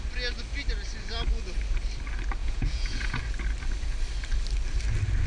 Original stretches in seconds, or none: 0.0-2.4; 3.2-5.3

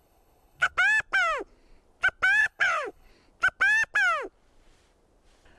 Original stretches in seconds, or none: 0.7-2.4; 3.1-5.6

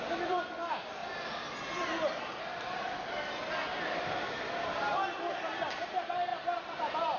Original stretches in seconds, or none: 1.0-5.3; 6.3-6.8